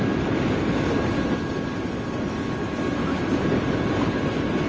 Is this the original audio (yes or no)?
yes